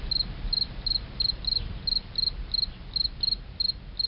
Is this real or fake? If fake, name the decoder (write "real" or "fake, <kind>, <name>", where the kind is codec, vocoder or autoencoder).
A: real